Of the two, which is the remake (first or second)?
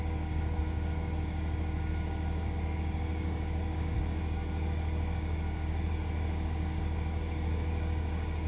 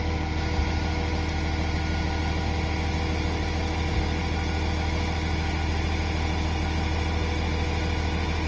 first